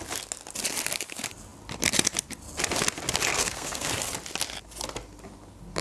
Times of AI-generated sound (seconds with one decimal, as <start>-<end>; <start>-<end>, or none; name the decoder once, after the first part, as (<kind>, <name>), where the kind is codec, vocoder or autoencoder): 3.3-3.9 (codec, SNAC)